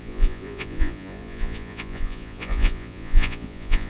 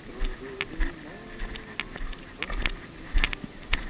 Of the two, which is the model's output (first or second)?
first